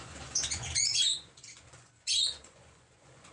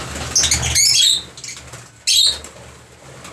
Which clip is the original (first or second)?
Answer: second